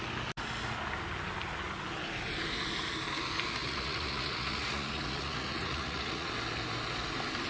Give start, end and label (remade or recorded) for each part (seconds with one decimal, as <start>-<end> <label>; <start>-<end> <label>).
0.0-3.6 recorded; 3.6-6.3 remade; 6.3-7.5 recorded